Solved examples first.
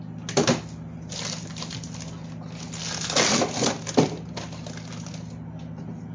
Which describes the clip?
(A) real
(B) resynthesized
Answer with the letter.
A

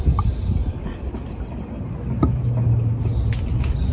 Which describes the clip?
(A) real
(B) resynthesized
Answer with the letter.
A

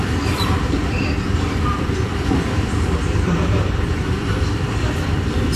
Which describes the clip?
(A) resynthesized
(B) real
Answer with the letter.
A